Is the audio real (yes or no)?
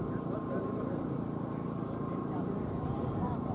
no